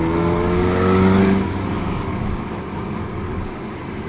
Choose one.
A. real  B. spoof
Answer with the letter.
B